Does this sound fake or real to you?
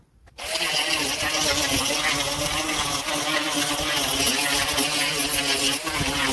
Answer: real